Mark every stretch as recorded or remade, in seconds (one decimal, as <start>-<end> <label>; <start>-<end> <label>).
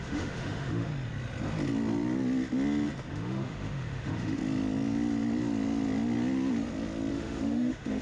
0.0-0.9 remade; 0.9-3.1 recorded; 3.1-4.4 remade; 4.4-7.1 recorded; 7.1-8.0 remade